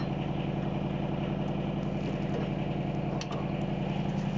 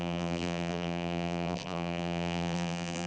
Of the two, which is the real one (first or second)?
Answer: first